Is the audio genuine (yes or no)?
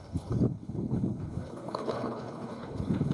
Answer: no